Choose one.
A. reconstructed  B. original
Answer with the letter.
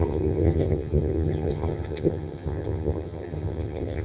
A